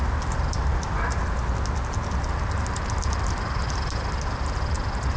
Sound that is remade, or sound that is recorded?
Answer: recorded